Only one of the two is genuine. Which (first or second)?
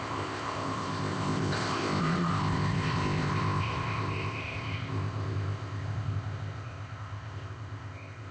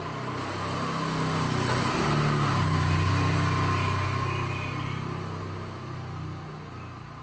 second